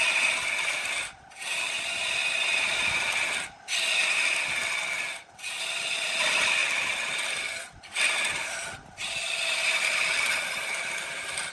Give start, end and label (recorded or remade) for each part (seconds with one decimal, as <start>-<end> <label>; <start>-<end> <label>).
0.0-11.5 recorded